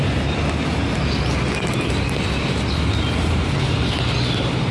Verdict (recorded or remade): recorded